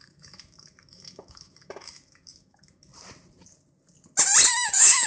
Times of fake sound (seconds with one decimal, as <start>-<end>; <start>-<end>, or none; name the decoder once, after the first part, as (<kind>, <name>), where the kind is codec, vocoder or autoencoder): 0.0-2.9 (autoencoder, DAC-VAE); 4.5-5.1